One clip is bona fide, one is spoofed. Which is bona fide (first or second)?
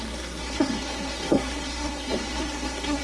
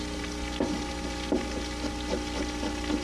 second